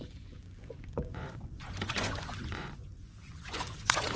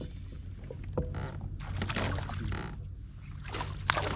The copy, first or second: first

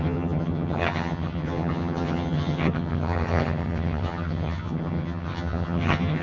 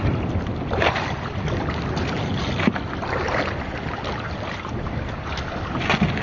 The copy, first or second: first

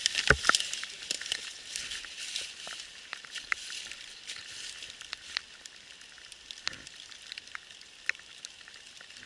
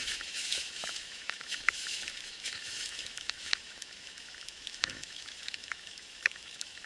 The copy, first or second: second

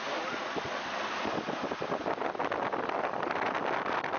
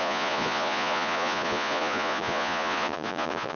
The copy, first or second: second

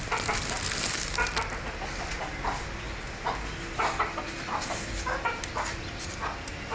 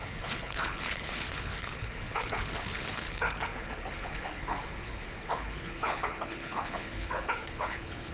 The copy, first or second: second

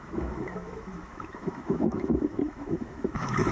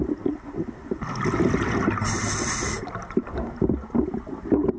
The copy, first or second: first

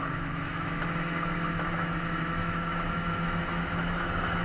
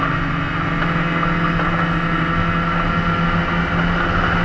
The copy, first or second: first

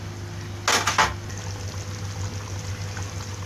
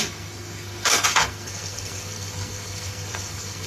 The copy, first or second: second